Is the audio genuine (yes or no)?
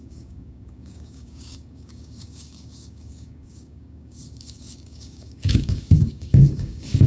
no